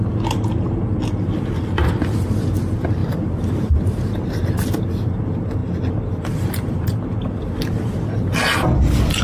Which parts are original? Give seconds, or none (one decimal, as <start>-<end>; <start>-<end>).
0.0-9.2